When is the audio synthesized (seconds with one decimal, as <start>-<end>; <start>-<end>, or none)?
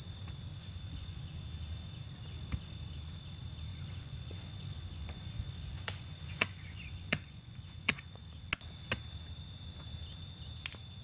0.5-1.2; 3.7-8.2